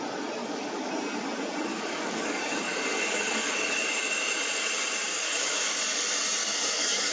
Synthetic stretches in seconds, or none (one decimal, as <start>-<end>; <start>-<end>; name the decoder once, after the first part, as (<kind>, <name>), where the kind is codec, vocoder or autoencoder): 0.4-0.9 (codec, DAC); 1.7-3.8; 5.1-5.8; 6.4-7.1